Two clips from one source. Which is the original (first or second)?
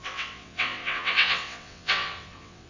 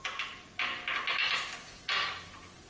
second